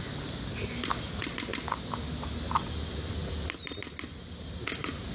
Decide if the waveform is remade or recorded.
recorded